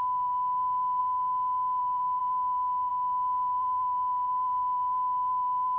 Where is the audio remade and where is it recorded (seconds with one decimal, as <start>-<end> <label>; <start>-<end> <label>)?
0.0-1.0 remade; 1.0-1.8 recorded; 1.8-5.8 remade